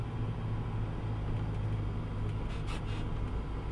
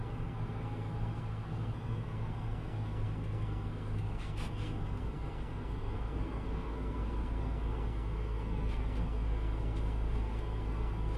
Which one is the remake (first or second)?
second